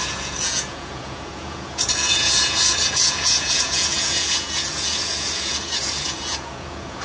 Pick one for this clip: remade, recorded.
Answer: remade